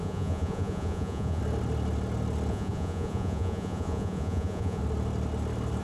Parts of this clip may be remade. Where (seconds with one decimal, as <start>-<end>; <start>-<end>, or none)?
0.0-1.4; 2.5-4.8